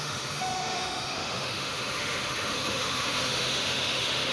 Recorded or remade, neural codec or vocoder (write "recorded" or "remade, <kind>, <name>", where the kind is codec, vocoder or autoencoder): remade, autoencoder, DAC-VAE